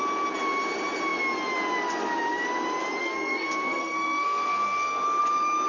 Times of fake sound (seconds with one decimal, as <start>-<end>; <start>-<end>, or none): 3.0-5.2